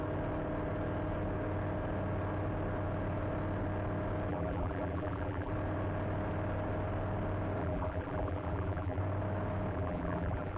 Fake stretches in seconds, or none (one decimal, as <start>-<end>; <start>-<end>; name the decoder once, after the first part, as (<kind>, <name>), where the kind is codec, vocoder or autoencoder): 4.3-5.5 (vocoder, BigVGAN v2); 7.6-9.0; 9.7-10.6